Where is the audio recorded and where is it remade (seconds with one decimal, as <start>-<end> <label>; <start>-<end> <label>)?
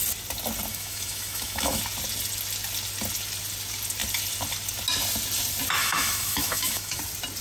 0.0-0.7 recorded; 0.7-1.8 remade; 1.8-5.8 recorded; 5.8-7.0 remade; 7.0-7.4 recorded